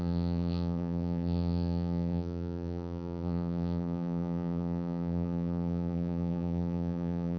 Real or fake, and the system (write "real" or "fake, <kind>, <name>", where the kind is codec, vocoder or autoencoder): fake, vocoder, BigVGAN v2